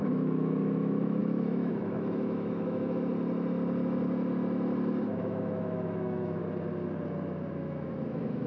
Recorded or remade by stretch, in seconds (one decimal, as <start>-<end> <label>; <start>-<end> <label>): 0.0-3.1 remade; 3.1-4.9 recorded; 4.9-6.4 remade; 6.4-7.5 recorded; 7.5-8.5 remade